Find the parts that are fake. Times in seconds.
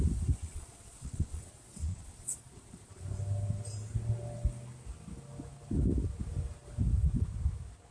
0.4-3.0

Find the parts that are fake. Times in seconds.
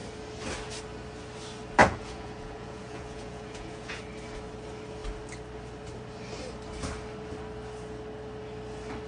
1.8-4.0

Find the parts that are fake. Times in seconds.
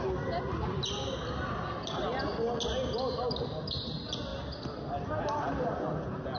none